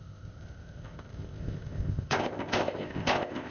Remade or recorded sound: remade